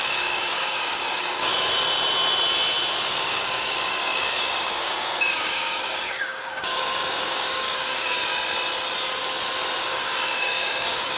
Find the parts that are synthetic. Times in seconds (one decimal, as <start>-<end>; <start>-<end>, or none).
0.0-1.5; 3.1-8.3; 9.8-11.2